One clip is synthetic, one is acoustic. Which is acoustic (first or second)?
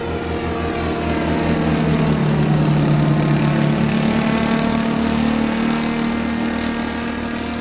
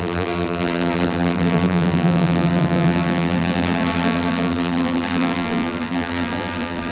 first